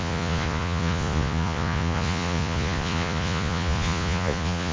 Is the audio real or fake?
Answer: fake